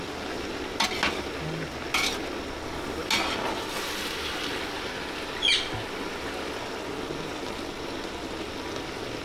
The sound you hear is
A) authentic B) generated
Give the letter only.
A